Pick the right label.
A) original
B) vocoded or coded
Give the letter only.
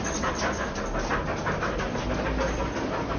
A